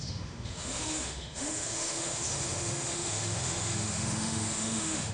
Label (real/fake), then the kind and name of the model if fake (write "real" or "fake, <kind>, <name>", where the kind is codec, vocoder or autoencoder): fake, autoencoder, DAC-VAE